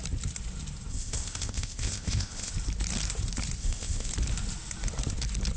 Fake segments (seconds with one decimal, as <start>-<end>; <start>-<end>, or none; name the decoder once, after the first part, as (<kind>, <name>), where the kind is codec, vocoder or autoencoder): 0.9-2.5 (codec, ZipCodec); 3.6-4.1

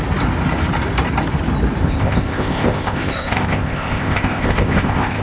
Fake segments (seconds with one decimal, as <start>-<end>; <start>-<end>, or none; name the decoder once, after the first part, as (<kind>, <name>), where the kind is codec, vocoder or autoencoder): 1.8-5.2 (codec, ZipCodec)